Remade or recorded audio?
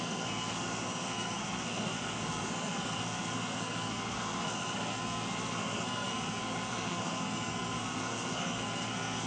remade